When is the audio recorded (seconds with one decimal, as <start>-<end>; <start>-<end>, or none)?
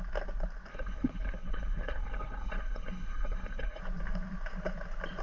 0.0-0.7; 3.8-5.2